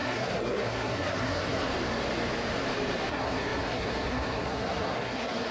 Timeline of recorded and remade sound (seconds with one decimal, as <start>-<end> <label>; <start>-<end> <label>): 0.0-1.7 remade; 1.7-3.1 recorded; 3.1-5.5 remade